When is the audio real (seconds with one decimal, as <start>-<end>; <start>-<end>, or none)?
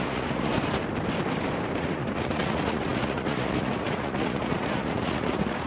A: 0.5-1.8